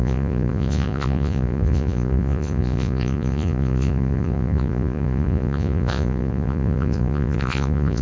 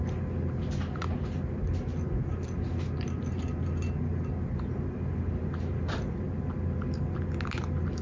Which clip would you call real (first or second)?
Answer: second